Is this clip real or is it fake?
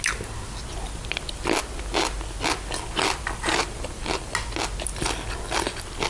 real